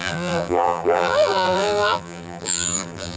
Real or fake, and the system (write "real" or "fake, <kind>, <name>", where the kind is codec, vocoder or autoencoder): fake, vocoder, BigVGAN v2